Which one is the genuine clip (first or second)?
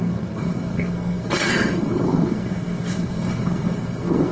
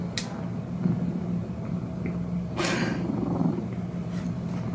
second